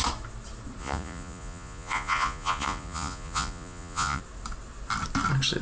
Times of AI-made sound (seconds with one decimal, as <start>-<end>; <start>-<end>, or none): 0.8-4.2